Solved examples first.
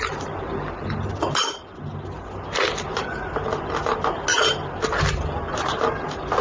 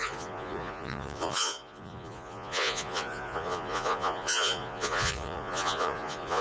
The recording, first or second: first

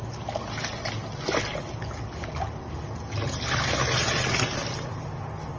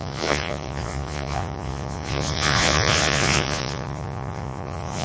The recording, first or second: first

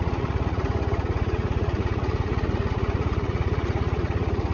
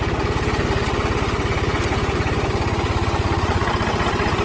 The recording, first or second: second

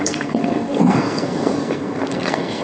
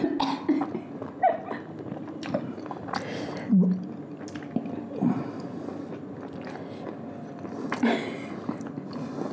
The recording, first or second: second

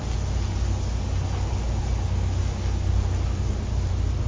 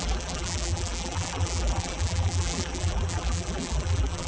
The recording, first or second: first